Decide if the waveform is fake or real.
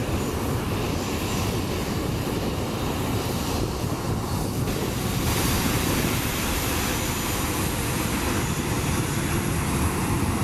fake